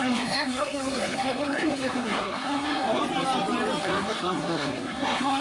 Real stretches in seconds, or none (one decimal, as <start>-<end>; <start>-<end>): 3.0-3.8